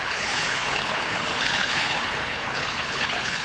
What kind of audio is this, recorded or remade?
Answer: remade